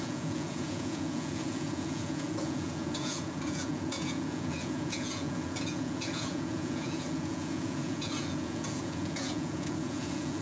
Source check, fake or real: fake